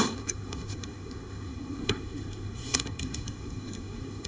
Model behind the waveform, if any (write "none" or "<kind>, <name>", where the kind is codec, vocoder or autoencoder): codec, SNAC